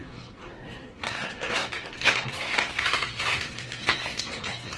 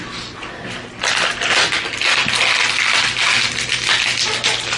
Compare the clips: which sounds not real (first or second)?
first